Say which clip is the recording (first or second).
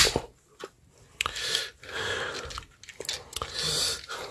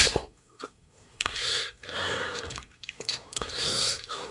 first